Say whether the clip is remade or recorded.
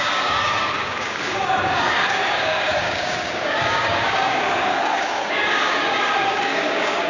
remade